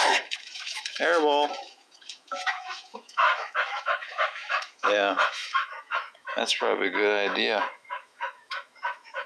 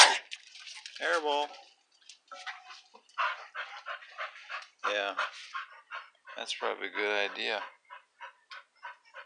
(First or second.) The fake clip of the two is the first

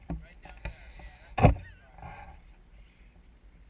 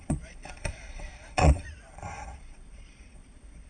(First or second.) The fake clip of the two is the second